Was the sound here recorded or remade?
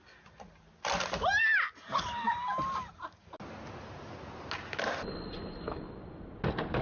recorded